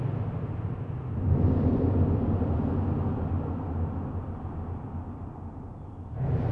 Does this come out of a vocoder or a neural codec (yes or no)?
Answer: no